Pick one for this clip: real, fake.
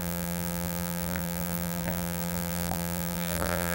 fake